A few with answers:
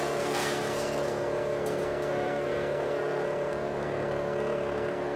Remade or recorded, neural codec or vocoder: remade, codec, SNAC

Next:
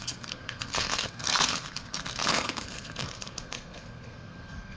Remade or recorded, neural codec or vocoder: remade, codec, SNAC